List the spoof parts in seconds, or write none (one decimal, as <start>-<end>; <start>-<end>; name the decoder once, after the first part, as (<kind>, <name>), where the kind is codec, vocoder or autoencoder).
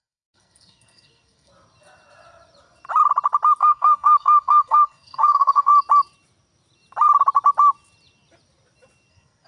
0.0-1.5 (codec, SNAC); 3.6-5.7; 9.1-9.5